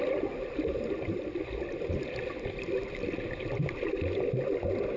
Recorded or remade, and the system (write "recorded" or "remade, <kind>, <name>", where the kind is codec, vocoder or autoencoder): recorded